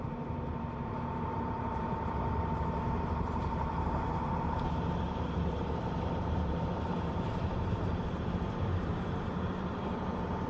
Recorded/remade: remade